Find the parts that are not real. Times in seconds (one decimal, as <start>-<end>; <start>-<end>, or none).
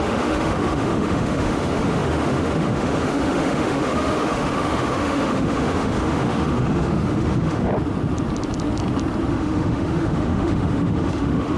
0.0-7.7; 9.3-11.6